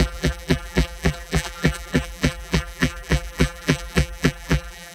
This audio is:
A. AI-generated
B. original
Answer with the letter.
A